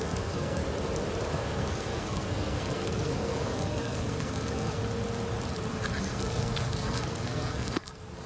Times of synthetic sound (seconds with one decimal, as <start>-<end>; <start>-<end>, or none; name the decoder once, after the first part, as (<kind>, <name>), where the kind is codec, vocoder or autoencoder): 0.0-0.6 (codec, SNAC); 1.3-4.8; 6.0-8.3